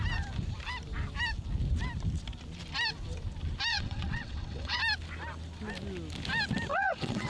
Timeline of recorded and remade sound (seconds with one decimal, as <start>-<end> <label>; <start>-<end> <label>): 0.0-3.7 recorded; 3.7-4.8 remade; 4.8-6.7 recorded; 6.7-7.3 remade

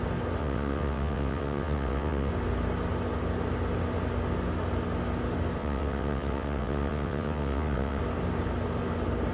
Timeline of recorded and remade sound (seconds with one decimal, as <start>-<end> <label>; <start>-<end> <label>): 0.0-0.4 recorded; 0.4-2.3 remade; 2.3-5.6 recorded; 5.6-8.0 remade; 8.0-9.3 recorded

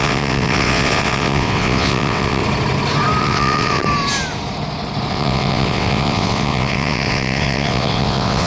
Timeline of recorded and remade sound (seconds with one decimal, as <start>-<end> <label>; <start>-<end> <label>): 0.0-2.4 remade; 2.4-3.2 recorded; 3.2-3.8 remade; 3.8-5.1 recorded; 5.1-8.5 remade